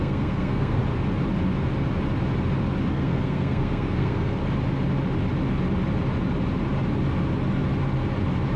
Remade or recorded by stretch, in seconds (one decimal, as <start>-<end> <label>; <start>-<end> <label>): 0.0-0.8 remade; 0.8-2.9 recorded; 2.9-4.4 remade; 4.4-8.6 recorded